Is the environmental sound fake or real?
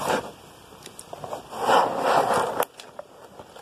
real